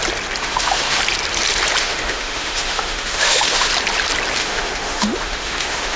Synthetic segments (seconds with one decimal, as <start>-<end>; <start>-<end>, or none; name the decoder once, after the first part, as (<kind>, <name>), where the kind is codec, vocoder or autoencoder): 0.4-1.0 (autoencoder, DAC-VAE); 1.8-3.7; 4.4-6.0